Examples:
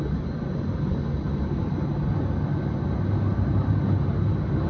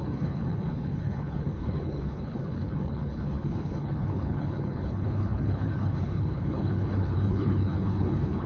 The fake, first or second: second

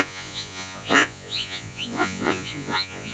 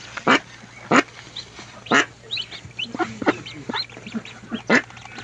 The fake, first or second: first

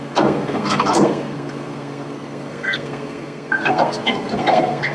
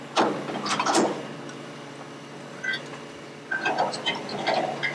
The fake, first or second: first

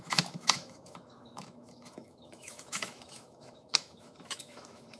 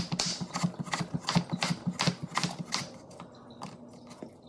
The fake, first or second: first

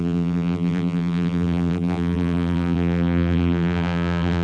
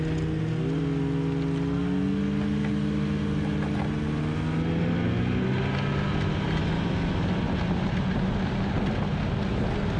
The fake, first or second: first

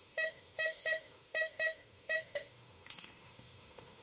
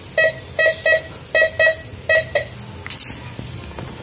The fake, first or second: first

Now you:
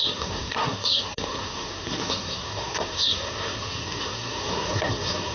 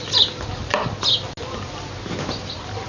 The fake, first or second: first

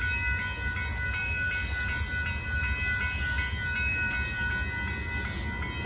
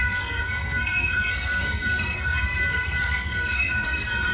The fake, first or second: second